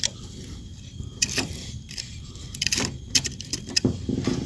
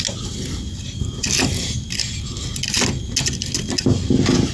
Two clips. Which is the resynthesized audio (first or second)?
first